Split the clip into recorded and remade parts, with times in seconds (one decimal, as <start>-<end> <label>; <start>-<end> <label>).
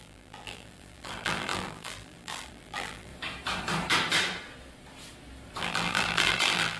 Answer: 0.0-3.1 remade; 3.1-5.6 recorded; 5.6-6.8 remade